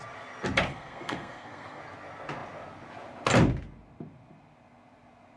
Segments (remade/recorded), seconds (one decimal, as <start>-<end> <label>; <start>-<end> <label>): 0.0-0.7 recorded; 0.7-1.8 remade; 1.8-5.4 recorded